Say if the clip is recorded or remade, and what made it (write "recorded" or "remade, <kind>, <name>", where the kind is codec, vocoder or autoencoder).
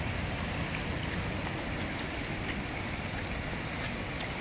recorded